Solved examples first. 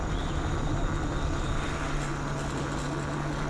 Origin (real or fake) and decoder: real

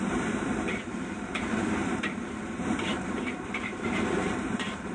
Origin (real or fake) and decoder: fake, vocoder, BigVGAN v2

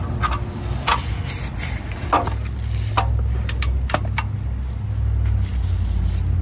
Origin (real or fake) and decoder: real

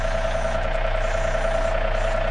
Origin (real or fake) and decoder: real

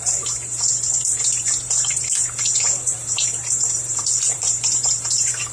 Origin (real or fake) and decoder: fake, vocoder, BigVGAN v2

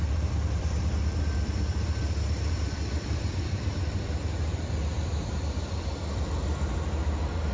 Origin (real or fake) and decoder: fake, vocoder, BigVGAN v2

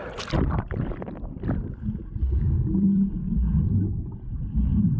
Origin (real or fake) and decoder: real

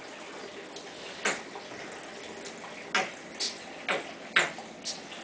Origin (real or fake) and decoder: real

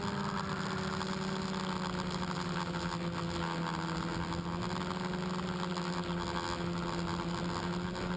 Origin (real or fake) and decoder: real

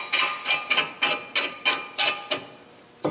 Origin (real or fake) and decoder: real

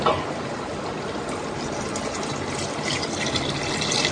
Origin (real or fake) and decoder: real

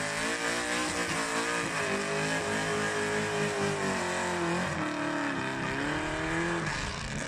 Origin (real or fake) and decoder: real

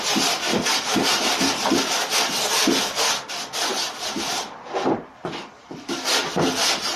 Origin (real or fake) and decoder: real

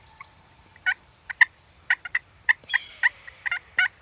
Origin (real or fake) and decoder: fake, vocoder, BigVGAN v2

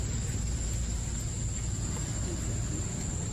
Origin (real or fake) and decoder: real